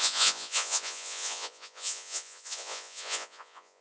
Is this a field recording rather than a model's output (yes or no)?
no